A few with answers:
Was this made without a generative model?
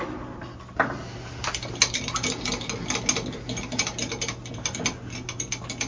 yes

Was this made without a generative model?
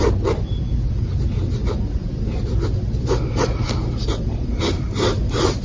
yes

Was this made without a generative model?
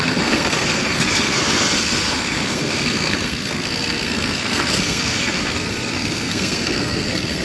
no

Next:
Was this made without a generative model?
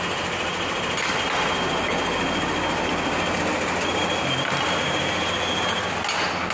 yes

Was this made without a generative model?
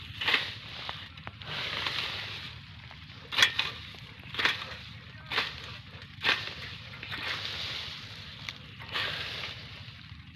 yes